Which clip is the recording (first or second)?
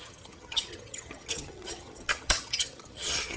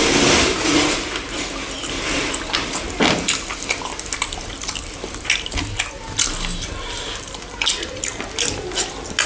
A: second